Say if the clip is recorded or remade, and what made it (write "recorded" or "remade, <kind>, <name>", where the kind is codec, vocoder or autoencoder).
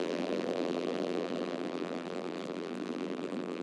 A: remade, vocoder, BigVGAN v2